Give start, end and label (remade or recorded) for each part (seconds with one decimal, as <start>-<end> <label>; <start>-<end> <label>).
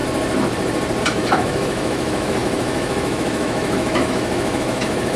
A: 0.0-1.0 recorded; 1.0-5.2 remade